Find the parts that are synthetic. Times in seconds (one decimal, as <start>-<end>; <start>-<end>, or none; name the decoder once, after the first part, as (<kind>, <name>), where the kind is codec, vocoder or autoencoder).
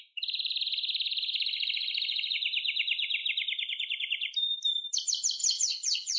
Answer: 5.4-6.2 (vocoder, HiFi-GAN)